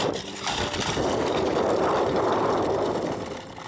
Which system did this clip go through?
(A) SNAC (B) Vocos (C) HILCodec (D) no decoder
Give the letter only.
D